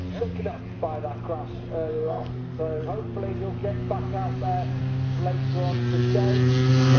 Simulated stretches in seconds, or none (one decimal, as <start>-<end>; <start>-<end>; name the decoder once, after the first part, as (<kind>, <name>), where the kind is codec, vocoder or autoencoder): 1.9-2.6 (codec, SNAC)